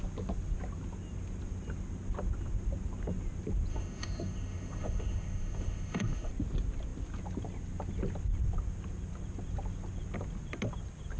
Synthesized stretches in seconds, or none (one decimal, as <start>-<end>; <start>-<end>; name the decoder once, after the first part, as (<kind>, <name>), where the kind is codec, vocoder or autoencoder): 3.7-6.3 (autoencoder, DAC-VAE)